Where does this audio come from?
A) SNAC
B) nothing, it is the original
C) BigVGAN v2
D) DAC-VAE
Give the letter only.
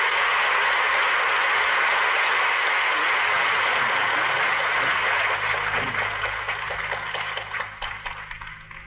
B